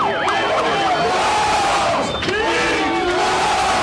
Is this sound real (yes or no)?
yes